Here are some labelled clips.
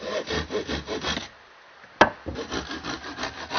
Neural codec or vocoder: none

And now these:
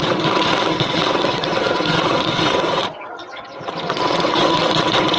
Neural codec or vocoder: vocoder, WaveNeXt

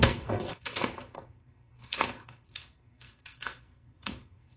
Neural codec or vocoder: codec, SNAC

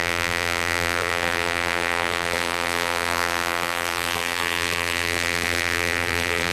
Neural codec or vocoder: vocoder, BigVGAN v2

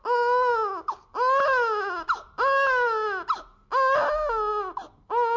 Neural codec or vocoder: none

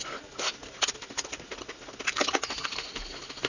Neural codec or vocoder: none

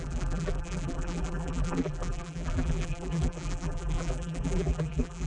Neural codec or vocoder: vocoder, BigVGAN v2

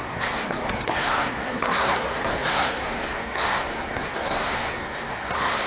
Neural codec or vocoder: codec, SNAC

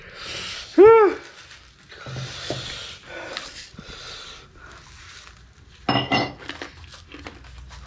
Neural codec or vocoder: none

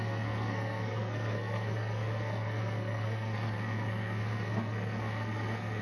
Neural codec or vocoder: codec, SNAC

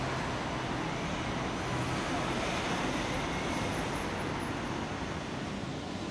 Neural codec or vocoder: none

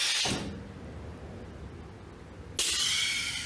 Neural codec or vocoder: none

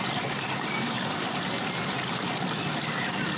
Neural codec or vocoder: none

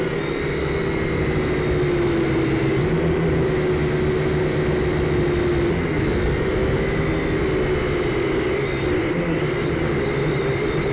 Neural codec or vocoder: none